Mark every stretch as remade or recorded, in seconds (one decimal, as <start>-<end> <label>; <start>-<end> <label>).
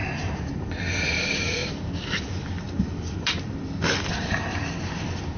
0.0-1.1 recorded; 1.1-5.4 remade